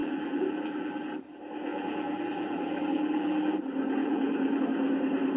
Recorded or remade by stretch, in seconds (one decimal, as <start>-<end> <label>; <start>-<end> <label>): 0.0-1.0 remade; 1.0-1.7 recorded; 1.7-3.6 remade; 3.6-4.0 recorded; 4.0-4.6 remade; 4.6-5.4 recorded